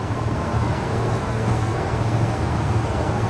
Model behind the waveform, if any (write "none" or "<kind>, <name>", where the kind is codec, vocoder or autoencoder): codec, SNAC